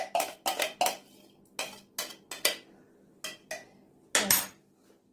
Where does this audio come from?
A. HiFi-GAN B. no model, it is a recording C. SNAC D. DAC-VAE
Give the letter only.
B